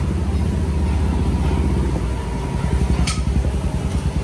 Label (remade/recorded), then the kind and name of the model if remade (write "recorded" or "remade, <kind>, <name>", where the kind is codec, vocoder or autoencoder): recorded